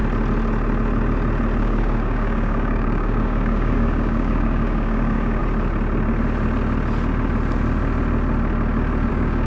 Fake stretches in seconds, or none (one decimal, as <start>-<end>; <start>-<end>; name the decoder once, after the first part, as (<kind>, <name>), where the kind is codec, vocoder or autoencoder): 1.6-5.4 (codec, DAC); 9.1-9.5